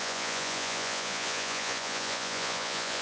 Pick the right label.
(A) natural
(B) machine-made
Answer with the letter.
B